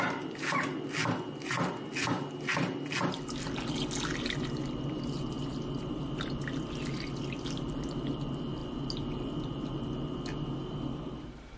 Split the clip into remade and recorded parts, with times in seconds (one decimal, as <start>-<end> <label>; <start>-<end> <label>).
0.0-11.6 recorded